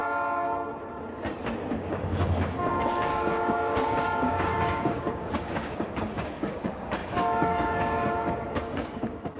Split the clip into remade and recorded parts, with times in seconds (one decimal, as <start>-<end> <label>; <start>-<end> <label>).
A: 0.0-1.7 recorded; 1.7-9.4 remade